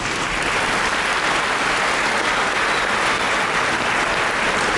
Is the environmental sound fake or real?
real